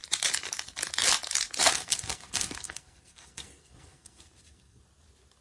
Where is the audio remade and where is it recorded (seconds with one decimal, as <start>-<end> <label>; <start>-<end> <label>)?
0.0-1.6 recorded; 1.6-4.8 remade; 4.8-5.4 recorded